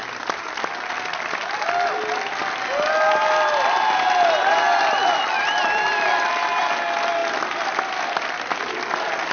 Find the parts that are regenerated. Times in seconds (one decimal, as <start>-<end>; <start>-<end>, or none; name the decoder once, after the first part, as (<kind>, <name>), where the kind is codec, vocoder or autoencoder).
none